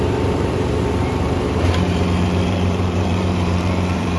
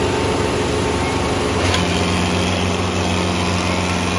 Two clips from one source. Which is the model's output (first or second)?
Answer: first